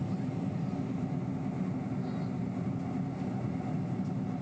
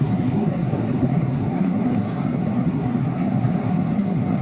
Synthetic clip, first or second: second